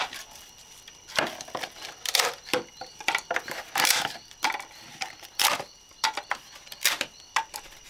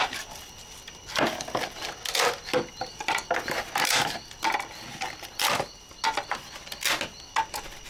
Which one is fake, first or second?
first